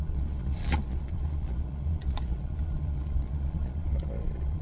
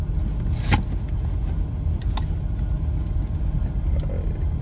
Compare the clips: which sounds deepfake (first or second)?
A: first